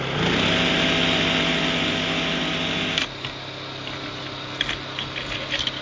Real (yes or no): yes